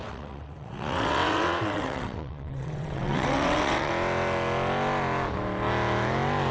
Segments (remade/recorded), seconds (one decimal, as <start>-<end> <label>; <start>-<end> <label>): 0.0-3.9 remade; 3.9-6.5 recorded